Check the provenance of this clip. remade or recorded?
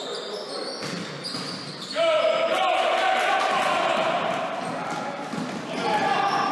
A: recorded